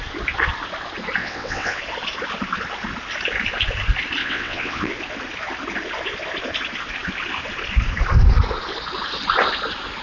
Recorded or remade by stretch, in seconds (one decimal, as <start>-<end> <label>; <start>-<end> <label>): 0.0-1.2 recorded; 1.2-1.8 remade; 1.8-4.2 recorded; 4.2-4.9 remade; 4.9-10.0 recorded